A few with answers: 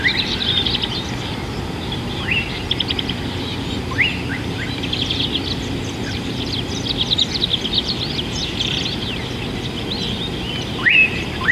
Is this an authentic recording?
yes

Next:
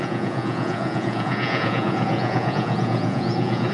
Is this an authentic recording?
no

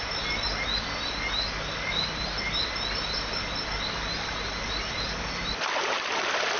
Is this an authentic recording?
yes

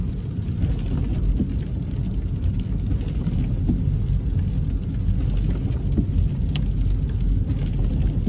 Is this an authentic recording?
yes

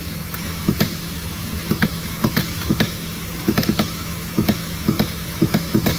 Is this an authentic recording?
no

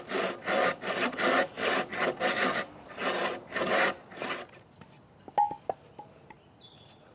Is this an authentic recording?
yes